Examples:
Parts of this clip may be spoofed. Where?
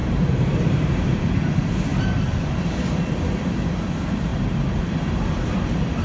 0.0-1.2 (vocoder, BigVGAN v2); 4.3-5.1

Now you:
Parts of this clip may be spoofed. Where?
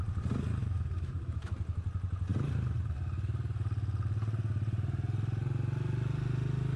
0.6-1.5 (autoencoder, DAC-VAE)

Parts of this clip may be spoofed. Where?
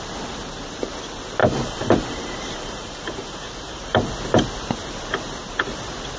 1.4-4.1 (vocoder, BigVGAN v2)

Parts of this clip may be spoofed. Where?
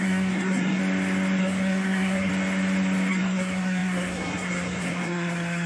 0.0-0.8 (codec, SNAC); 1.4-2.3; 3.1-5.7